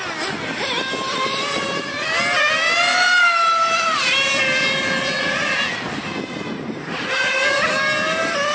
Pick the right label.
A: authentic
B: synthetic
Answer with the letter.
A